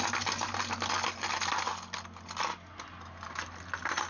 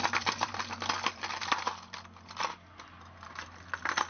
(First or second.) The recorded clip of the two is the first